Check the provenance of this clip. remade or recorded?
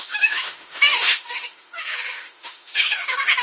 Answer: remade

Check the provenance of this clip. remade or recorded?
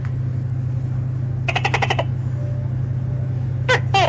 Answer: recorded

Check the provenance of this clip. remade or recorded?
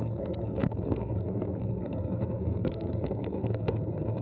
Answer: remade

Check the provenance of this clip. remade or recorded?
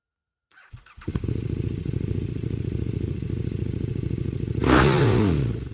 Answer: remade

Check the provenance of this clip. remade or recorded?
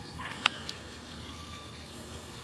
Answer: remade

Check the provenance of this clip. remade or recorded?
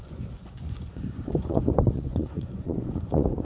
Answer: remade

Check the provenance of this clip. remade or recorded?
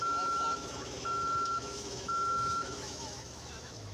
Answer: remade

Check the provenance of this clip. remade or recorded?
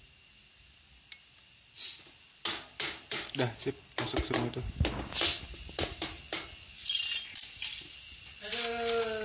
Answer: recorded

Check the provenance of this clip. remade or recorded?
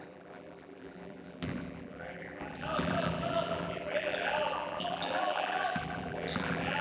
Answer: remade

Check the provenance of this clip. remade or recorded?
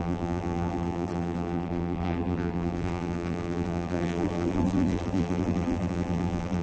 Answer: remade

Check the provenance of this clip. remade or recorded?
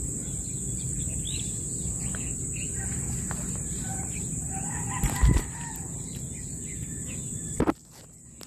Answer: recorded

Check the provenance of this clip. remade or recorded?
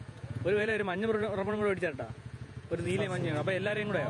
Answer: remade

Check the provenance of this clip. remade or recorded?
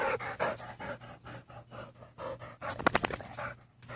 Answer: recorded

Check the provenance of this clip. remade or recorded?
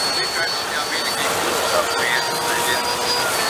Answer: recorded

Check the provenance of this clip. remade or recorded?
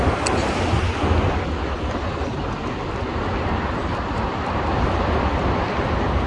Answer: recorded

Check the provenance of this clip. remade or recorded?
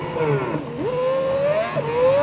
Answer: recorded